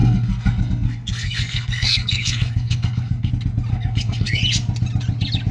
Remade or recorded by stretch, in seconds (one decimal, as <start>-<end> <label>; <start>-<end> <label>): 0.0-3.3 remade; 3.3-3.7 recorded; 3.7-4.4 remade; 4.4-5.5 recorded